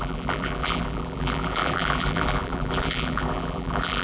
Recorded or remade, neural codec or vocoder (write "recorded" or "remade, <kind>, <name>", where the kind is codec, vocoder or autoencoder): remade, vocoder, BigVGAN v2